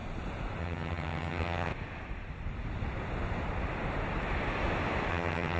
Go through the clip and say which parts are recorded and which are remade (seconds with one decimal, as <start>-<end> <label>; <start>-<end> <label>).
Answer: 0.0-0.6 recorded; 0.6-1.7 remade; 1.7-5.1 recorded; 5.1-5.6 remade